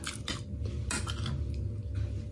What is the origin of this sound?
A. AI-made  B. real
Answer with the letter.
B